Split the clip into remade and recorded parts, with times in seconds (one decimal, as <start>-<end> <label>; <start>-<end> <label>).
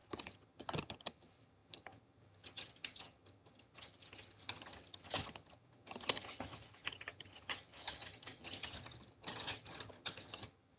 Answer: 0.0-10.8 remade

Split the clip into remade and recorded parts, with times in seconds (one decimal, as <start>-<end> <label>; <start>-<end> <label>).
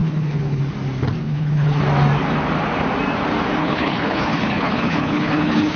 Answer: 0.0-0.6 remade; 0.6-1.2 recorded; 1.2-1.8 remade; 1.8-3.6 recorded; 3.6-5.8 remade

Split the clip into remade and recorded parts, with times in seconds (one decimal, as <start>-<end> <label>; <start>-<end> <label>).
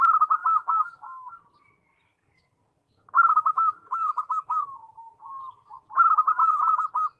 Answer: 0.0-0.4 recorded; 0.4-1.3 remade; 1.3-2.1 recorded; 2.1-5.9 remade; 5.9-7.2 recorded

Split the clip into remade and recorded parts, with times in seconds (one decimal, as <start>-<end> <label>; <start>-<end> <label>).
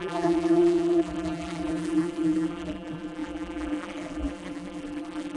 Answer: 0.0-5.4 remade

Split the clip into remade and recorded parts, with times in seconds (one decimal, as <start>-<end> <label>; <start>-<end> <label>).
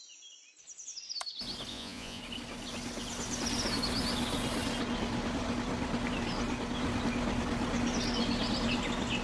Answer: 0.0-1.7 recorded; 1.7-2.2 remade; 2.2-9.2 recorded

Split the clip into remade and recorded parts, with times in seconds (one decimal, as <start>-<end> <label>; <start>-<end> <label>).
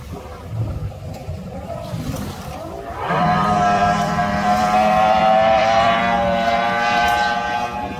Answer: 0.0-1.2 recorded; 1.2-6.0 remade; 6.0-8.0 recorded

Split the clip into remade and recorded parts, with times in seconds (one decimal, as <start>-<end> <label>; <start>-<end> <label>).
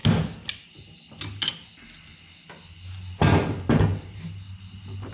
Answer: 0.0-5.1 recorded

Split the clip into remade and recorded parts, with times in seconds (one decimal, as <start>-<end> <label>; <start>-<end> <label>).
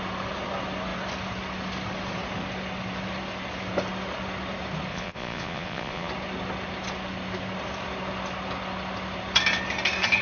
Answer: 0.0-4.9 recorded; 4.9-6.1 remade; 6.1-10.2 recorded